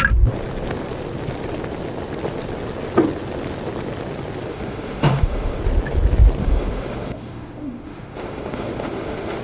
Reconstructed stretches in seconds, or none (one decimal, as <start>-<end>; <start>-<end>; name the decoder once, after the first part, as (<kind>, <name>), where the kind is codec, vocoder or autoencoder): 4.5-5.6 (autoencoder, DAC-VAE); 6.4-9.4